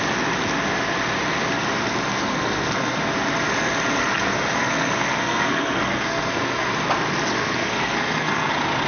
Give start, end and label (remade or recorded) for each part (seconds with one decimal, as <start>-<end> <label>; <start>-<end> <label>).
0.0-2.3 recorded; 2.3-3.0 remade; 3.0-4.0 recorded; 4.0-6.7 remade; 6.7-7.3 recorded; 7.3-8.5 remade; 8.5-8.9 recorded

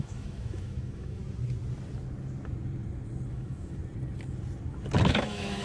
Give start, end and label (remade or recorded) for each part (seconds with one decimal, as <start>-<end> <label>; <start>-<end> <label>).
0.0-1.2 remade; 1.2-3.3 recorded; 3.3-3.8 remade; 3.8-5.1 recorded; 5.1-5.6 remade

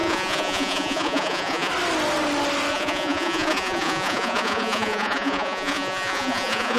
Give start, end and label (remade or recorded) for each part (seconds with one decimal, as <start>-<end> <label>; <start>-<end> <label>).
0.0-1.7 remade; 1.7-2.7 recorded; 2.7-6.8 remade